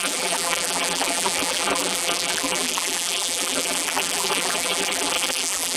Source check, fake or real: fake